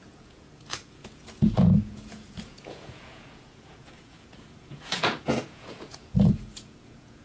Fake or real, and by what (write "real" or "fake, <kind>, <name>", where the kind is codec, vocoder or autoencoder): fake, vocoder, Vocos